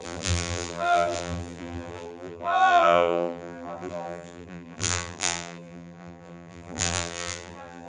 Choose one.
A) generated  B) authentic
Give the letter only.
A